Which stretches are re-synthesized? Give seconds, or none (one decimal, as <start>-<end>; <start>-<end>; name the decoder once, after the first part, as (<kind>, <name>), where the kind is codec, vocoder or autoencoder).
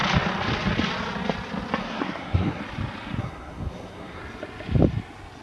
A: 1.8-2.6 (codec, SNAC); 3.2-4.2